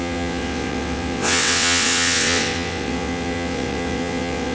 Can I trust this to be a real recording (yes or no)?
no